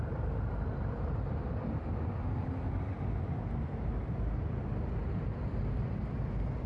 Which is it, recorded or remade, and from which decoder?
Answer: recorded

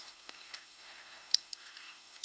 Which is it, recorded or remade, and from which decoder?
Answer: remade, codec, SNAC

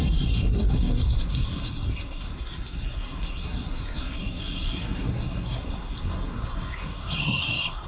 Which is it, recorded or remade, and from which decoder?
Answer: remade, codec, SNAC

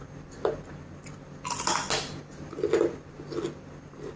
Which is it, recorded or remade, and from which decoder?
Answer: recorded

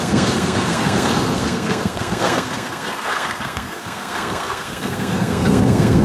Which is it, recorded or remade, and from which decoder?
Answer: remade, codec, SNAC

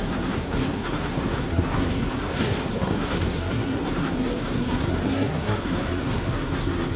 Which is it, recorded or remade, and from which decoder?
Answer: remade, codec, SNAC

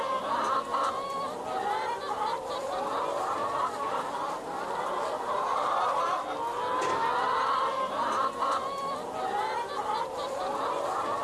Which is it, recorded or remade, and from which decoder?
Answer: recorded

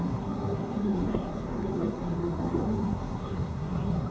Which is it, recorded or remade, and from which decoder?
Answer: remade, codec, SNAC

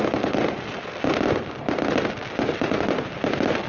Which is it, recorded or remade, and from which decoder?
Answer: recorded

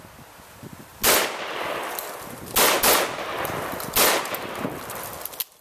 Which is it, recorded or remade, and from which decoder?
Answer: recorded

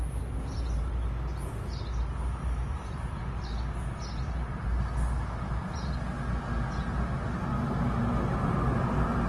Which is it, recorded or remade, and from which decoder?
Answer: recorded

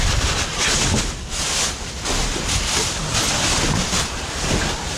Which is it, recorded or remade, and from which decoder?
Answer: recorded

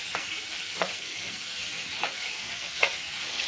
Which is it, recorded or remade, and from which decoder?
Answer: remade, codec, SNAC